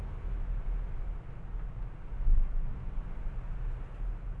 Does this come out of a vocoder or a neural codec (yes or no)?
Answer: no